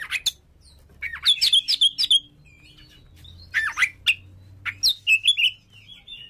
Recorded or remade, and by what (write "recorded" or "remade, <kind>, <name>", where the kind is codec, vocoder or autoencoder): recorded